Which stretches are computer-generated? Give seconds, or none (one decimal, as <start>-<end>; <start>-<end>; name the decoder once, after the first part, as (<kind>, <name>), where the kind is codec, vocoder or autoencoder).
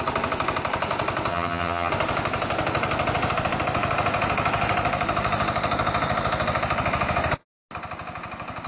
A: 1.3-1.9 (vocoder, HiFi-GAN)